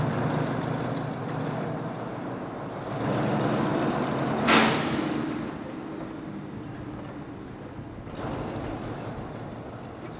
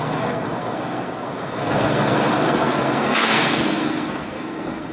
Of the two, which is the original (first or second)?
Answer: first